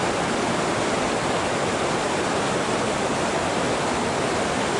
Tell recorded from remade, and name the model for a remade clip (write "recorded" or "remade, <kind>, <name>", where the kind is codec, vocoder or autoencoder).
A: recorded